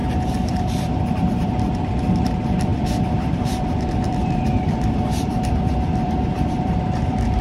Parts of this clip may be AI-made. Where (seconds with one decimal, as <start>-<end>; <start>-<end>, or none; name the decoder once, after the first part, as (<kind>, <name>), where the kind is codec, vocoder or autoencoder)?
0.0-7.4 (vocoder, BigVGAN v2)